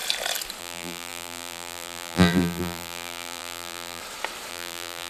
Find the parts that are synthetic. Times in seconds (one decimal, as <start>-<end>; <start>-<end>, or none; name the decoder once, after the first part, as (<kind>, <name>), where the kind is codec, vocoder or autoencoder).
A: 0.6-4.0 (vocoder, BigVGAN v2); 4.5-5.1